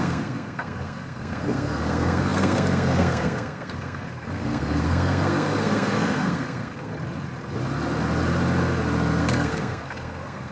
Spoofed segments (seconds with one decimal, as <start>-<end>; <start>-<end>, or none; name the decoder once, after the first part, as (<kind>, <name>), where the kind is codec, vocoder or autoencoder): 0.0-6.9 (codec, SNAC); 9.2-10.5